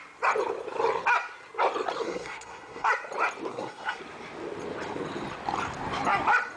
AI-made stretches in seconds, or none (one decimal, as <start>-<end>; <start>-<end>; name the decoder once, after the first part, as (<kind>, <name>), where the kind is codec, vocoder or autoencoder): 2.0-2.9 (codec, SNAC); 3.5-4.0